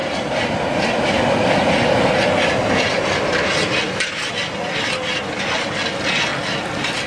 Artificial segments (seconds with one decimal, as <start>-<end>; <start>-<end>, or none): none